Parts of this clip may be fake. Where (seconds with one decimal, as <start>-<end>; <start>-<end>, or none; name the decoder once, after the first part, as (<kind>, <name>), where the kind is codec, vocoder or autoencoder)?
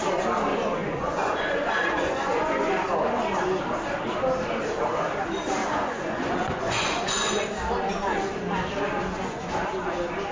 0.5-2.7 (vocoder, Vocos); 5.6-7.3; 9.0-9.9